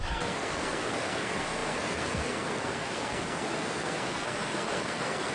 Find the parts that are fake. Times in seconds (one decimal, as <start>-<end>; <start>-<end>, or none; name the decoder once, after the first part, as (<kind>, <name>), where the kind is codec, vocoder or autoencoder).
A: 0.0-5.3 (codec, SNAC)